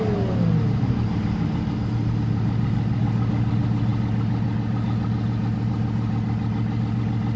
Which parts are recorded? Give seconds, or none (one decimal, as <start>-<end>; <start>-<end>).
0.0-7.4